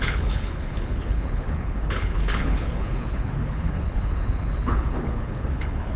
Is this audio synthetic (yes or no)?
yes